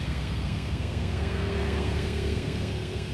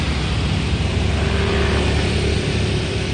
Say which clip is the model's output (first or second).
first